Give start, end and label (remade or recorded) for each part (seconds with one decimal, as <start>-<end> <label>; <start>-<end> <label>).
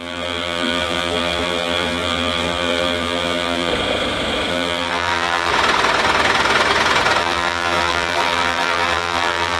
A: 0.0-3.7 remade; 3.7-4.5 recorded; 4.5-5.5 remade; 5.5-7.2 recorded; 7.2-9.6 remade